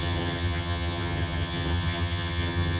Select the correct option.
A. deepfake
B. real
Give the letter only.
A